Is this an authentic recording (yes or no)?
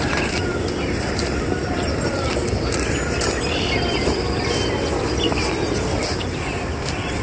yes